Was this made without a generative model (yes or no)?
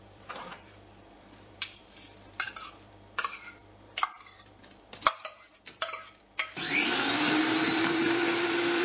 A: no